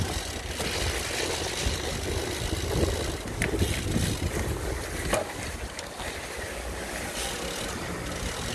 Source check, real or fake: real